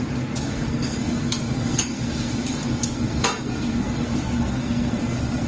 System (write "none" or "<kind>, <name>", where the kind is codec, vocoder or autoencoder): codec, SNAC